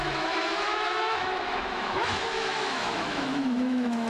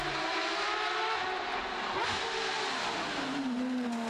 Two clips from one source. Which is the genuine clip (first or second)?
second